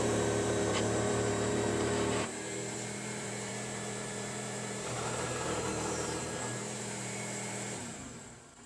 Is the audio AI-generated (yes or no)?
yes